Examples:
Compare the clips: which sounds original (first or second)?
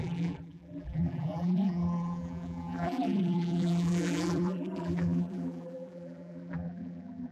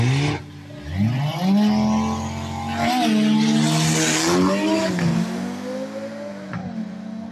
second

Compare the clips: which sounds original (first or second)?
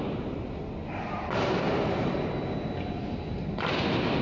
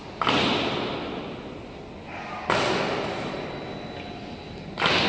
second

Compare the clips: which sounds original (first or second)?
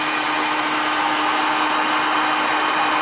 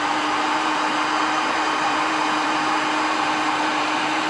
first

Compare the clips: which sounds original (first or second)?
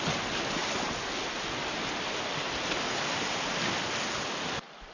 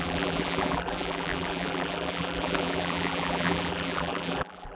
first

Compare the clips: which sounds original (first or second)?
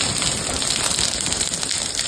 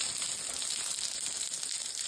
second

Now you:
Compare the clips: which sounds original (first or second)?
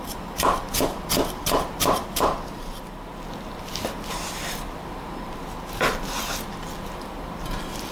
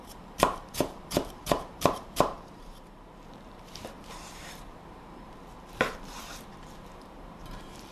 first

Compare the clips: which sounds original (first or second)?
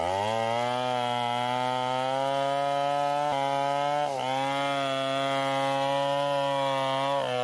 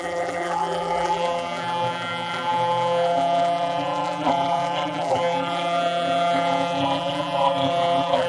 first